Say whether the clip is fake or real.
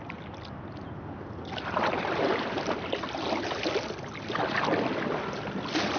real